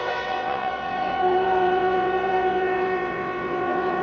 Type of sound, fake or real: fake